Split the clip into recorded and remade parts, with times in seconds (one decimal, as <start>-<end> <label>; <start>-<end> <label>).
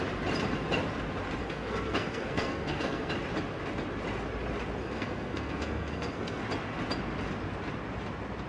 0.0-1.4 recorded; 1.4-3.1 remade; 3.1-4.8 recorded; 4.8-6.4 remade; 6.4-8.5 recorded